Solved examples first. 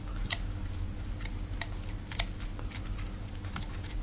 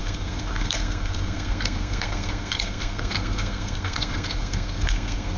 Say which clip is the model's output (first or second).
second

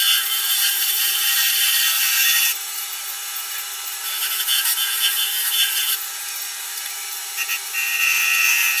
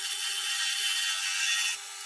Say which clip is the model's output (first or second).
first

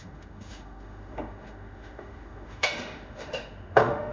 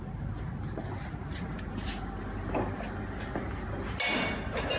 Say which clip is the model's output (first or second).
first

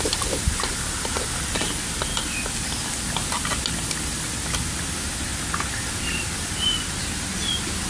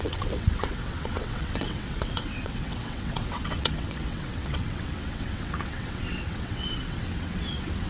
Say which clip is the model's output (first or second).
second